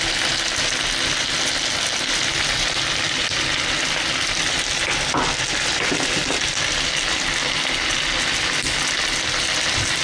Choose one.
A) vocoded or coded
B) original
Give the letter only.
B